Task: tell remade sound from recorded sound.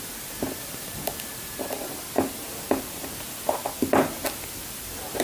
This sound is recorded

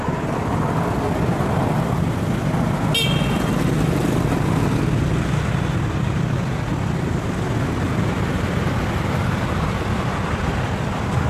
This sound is recorded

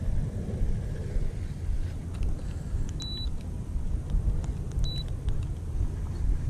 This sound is recorded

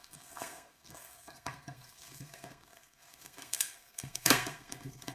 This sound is remade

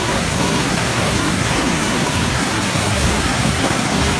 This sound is remade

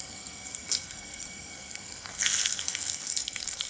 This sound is remade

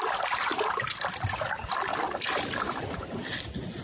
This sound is recorded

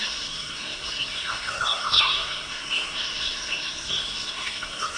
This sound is remade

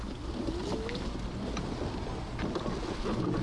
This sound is recorded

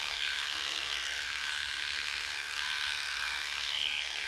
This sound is remade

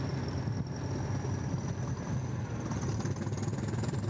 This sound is recorded